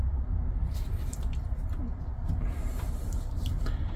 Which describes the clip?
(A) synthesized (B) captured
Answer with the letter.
A